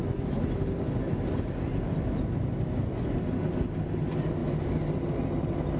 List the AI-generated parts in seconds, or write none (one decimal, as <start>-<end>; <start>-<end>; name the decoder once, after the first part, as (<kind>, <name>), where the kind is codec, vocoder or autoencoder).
none